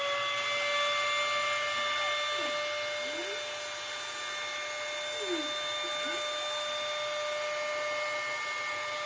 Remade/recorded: recorded